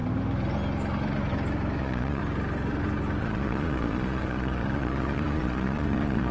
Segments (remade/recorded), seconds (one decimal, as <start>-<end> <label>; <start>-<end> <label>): 0.0-1.8 recorded; 1.8-2.2 remade; 2.2-3.2 recorded; 3.2-6.3 remade